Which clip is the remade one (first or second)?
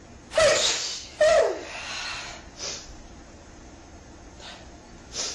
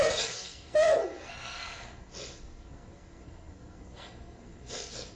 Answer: second